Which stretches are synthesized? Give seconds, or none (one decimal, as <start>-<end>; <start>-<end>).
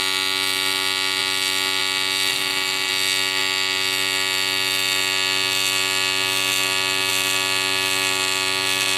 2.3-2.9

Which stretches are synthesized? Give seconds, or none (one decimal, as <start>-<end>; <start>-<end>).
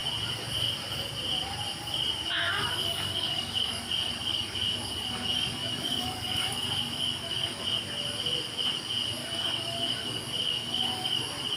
2.4-7.6; 9.2-11.2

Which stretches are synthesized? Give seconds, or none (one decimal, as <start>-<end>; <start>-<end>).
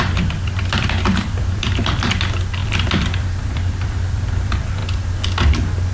0.0-4.8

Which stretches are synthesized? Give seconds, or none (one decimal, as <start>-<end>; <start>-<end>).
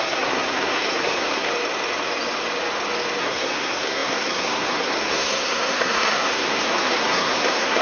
0.0-1.5; 3.2-7.8